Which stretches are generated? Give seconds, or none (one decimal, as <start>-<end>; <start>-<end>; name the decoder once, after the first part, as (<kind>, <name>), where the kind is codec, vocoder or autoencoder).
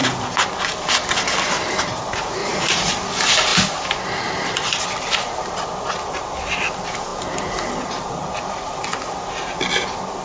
2.4-2.9 (vocoder, Vocos)